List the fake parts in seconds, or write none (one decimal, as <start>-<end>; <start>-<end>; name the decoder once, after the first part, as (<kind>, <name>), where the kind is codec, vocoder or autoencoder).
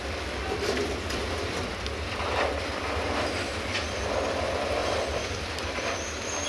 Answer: 0.0-4.8 (vocoder, BigVGAN v2); 5.6-6.5